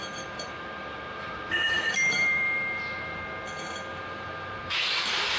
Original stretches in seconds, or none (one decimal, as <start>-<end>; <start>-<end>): 3.2-3.9